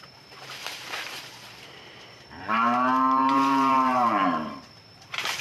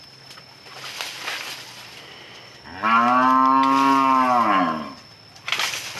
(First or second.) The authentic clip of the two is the second